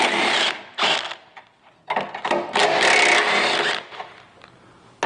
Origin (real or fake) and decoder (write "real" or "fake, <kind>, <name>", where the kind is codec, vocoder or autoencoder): real